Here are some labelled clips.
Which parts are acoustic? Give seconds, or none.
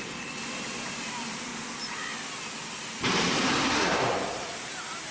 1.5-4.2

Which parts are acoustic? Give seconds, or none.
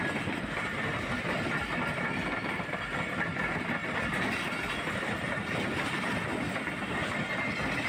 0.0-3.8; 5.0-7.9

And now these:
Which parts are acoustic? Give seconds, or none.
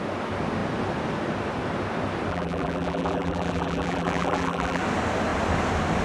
0.0-2.3; 4.8-6.0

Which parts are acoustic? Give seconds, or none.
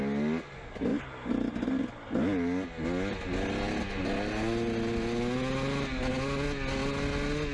0.0-7.5